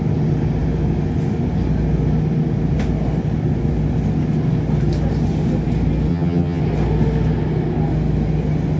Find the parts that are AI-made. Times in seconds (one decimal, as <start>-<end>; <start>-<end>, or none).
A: 6.1-6.6

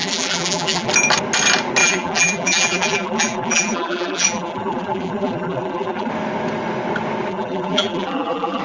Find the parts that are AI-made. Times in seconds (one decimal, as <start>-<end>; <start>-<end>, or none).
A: 0.0-0.9; 1.8-6.1; 7.3-8.6

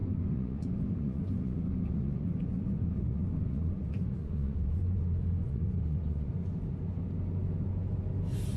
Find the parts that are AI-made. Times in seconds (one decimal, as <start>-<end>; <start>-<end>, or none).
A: 0.0-5.0; 5.4-6.3

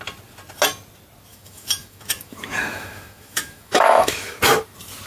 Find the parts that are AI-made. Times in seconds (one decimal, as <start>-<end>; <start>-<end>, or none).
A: 1.3-4.4

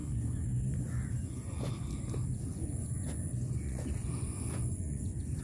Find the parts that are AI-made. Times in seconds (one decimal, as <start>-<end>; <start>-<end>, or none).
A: 0.0-1.7; 2.5-5.4

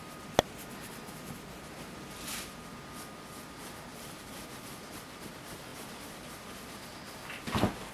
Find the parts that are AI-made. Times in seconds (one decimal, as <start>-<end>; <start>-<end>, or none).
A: 3.9-5.3; 5.7-7.3

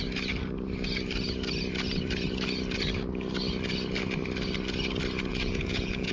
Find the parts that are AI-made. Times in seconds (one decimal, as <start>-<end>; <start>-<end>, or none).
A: 5.3-6.1

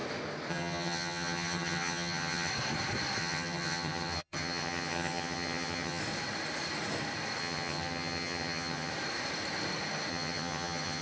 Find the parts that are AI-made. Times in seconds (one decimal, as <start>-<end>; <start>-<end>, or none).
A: 0.5-2.5; 3.2-6.0; 7.4-8.9; 10.1-11.0